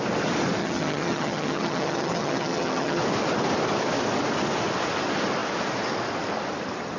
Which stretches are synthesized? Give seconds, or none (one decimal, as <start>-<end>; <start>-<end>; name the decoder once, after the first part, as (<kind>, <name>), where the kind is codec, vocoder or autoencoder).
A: 0.6-3.0 (vocoder, HiFi-GAN)